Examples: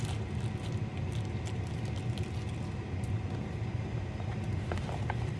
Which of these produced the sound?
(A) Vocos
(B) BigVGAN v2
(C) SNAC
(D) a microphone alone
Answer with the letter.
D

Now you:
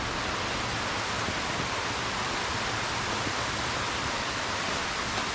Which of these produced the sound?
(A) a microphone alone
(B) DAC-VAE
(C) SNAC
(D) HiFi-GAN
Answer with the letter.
A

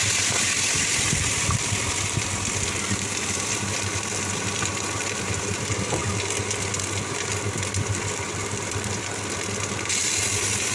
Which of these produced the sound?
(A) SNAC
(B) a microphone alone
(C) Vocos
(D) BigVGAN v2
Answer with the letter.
B